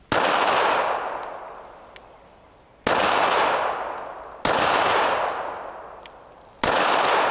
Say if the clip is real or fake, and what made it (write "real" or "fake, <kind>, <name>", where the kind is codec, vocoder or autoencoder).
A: real